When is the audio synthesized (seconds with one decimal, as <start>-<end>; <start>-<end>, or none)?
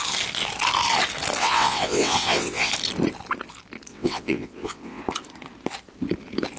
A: 1.4-2.7; 3.9-5.0